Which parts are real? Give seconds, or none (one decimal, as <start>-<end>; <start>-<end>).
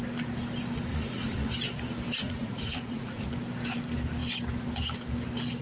0.0-0.9; 1.5-2.2; 3.3-5.6